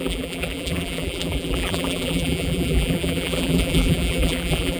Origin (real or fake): fake